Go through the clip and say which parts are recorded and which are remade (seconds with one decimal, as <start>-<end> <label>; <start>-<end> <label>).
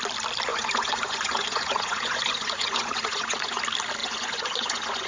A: 0.0-0.5 recorded; 0.5-3.6 remade; 3.6-4.0 recorded; 4.0-5.1 remade